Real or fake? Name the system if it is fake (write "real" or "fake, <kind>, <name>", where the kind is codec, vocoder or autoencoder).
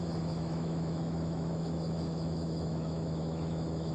fake, autoencoder, DAC-VAE